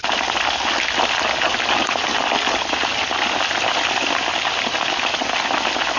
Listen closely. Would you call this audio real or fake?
real